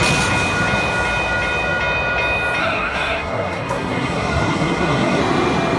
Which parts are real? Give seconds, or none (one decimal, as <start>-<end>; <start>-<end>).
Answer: 0.0-2.6; 5.2-5.8